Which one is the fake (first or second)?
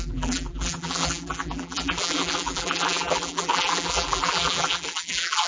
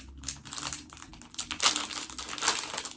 first